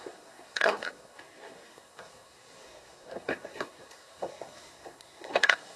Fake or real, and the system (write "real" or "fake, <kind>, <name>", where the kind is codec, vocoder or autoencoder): fake, codec, SNAC